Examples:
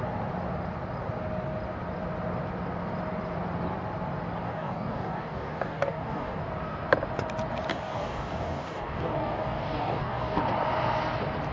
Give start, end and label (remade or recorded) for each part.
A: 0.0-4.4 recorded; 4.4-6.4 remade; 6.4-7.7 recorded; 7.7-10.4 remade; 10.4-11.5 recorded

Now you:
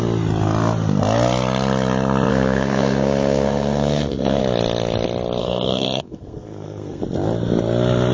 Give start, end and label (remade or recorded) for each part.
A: 0.0-2.3 recorded; 2.3-4.4 remade; 4.4-5.4 recorded; 5.4-7.0 remade; 7.0-8.1 recorded

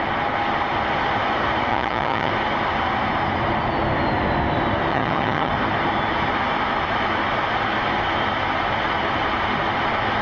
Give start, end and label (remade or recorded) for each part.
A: 0.0-1.7 recorded; 1.7-2.3 remade; 2.3-4.9 recorded; 4.9-5.5 remade; 5.5-10.2 recorded

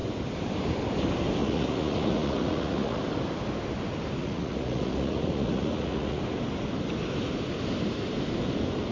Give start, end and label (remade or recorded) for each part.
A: 0.0-1.4 recorded; 1.4-3.0 remade; 3.0-4.2 recorded; 4.2-6.2 remade; 6.2-8.9 recorded

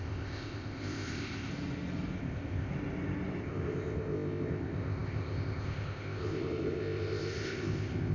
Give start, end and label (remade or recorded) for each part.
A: 0.0-1.5 remade; 1.5-2.2 recorded; 2.2-2.7 remade; 2.7-3.4 recorded; 3.4-8.1 remade

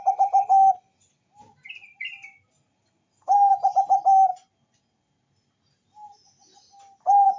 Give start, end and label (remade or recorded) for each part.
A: 0.0-7.4 recorded

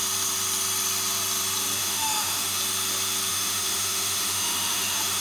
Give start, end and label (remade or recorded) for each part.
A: 0.0-1.8 recorded; 1.8-2.6 remade; 2.6-3.3 recorded; 3.3-5.2 remade